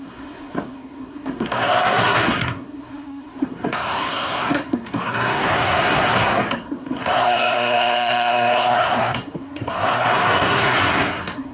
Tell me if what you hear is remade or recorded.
remade